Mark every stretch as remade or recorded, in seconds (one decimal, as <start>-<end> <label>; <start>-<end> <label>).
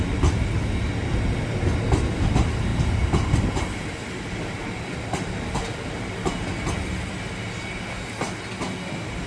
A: 0.0-9.3 recorded